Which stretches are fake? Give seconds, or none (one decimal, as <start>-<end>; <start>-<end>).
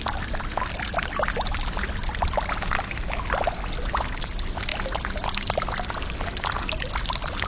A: none